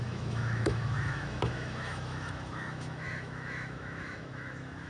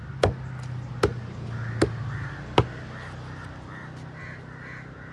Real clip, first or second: second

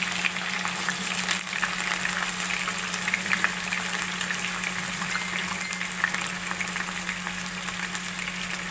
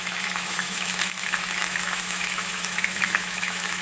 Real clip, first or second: first